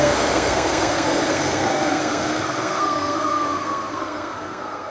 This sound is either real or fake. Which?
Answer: fake